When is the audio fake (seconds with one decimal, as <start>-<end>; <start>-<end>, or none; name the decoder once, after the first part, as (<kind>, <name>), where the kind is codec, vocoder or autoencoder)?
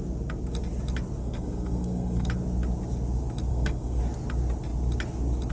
1.2-2.3 (codec, SNAC); 3.5-4.0